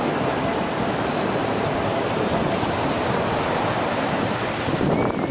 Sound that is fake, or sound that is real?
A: fake